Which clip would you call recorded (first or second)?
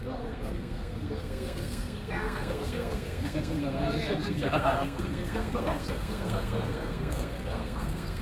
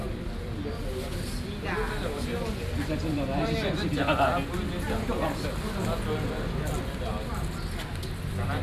second